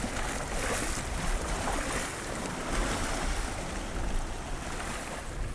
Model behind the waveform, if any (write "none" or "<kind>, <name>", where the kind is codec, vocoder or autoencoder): none